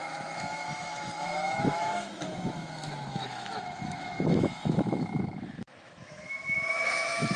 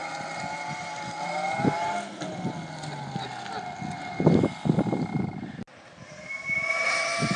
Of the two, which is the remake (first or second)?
first